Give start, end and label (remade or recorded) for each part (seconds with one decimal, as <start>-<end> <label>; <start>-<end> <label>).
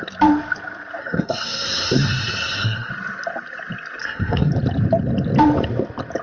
0.0-1.0 recorded; 1.0-2.9 remade; 2.9-4.0 recorded; 4.0-4.5 remade; 4.5-6.2 recorded